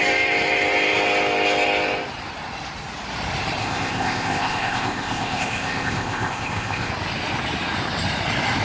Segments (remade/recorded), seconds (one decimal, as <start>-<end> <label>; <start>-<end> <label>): 0.0-3.6 recorded; 3.6-6.9 remade; 6.9-8.6 recorded